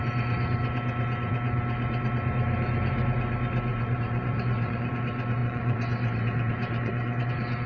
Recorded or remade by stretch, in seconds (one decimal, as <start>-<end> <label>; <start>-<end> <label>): 0.0-3.7 recorded; 3.7-4.9 remade; 4.9-5.4 recorded; 5.4-7.3 remade; 7.3-7.7 recorded